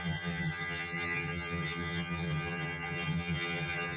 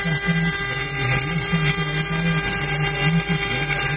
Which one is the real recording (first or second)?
second